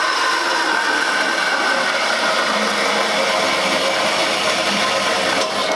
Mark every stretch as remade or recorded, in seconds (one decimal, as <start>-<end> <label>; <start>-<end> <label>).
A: 0.0-4.2 recorded; 4.2-4.8 remade; 4.8-5.8 recorded